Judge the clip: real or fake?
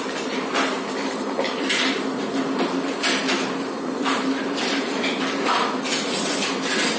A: fake